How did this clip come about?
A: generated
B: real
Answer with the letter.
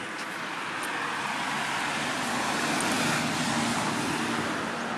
B